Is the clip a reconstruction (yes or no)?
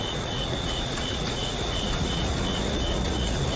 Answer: yes